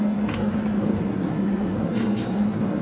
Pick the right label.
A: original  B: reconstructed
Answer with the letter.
B